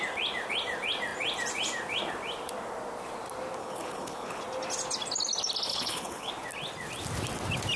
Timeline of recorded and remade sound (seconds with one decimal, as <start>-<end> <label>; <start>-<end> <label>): 0.0-3.6 recorded; 3.6-4.4 remade; 4.4-5.7 recorded; 5.7-6.3 remade; 6.3-7.8 recorded